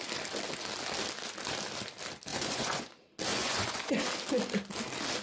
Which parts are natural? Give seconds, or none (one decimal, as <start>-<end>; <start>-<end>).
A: 0.0-2.3; 2.9-3.3; 4.0-5.2